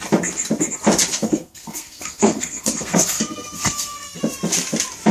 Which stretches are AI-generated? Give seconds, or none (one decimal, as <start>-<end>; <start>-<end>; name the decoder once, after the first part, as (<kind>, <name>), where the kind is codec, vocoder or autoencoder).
1.1-4.2 (codec, SNAC)

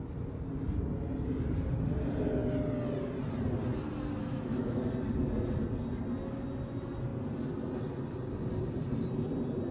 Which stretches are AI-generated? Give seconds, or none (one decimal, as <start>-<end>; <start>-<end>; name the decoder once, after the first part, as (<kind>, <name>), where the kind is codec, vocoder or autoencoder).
4.2-4.8 (autoencoder, DAC-VAE)